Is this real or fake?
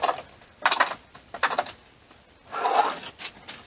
real